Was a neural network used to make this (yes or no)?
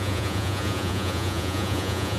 yes